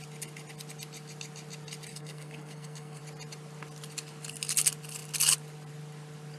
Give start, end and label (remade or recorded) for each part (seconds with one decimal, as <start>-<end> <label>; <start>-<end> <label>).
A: 0.0-1.9 recorded; 1.9-3.0 remade; 3.0-6.4 recorded